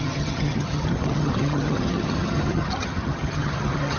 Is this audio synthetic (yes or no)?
yes